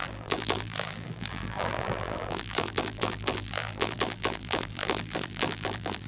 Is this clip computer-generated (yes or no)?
yes